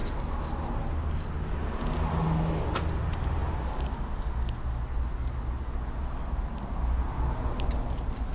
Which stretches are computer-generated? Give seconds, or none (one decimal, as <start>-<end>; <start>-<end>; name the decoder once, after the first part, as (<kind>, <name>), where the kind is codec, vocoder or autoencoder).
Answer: none